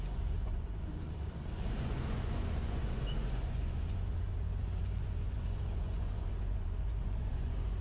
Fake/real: fake